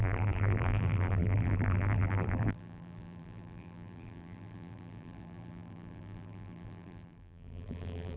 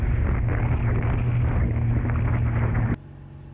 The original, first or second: second